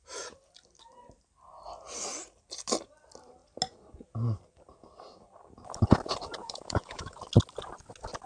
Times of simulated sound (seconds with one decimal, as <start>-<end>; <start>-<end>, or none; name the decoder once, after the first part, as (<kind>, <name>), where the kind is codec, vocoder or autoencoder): 6.4-7.2 (autoencoder, DAC-VAE)